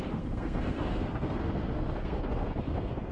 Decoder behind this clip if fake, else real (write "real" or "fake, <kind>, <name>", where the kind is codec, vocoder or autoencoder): fake, codec, SNAC